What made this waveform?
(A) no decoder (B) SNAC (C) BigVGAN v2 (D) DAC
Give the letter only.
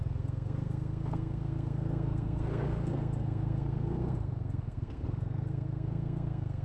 B